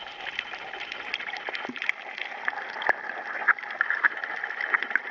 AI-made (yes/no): no